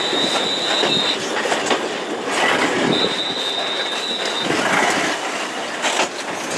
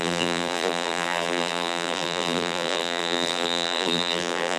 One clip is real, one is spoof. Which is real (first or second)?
first